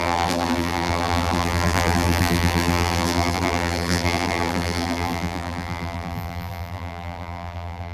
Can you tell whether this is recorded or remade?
remade